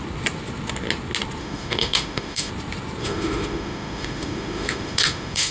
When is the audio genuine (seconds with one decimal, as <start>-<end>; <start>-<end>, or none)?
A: 0.0-1.4; 2.5-3.0